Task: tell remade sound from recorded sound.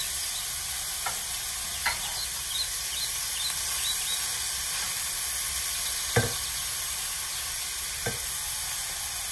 recorded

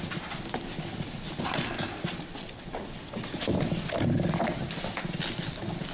recorded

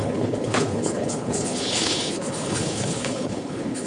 remade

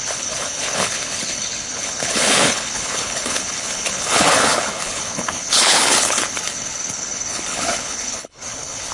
remade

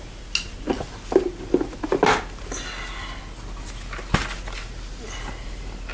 recorded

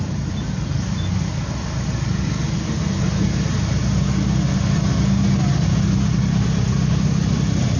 recorded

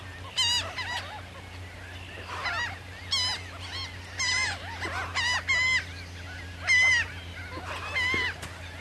recorded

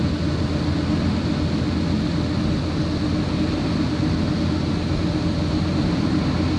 recorded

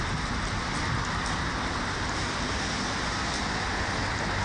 recorded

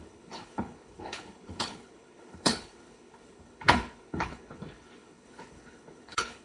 remade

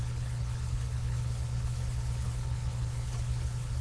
remade